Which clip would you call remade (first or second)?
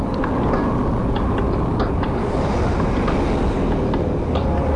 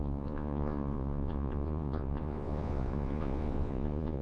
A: second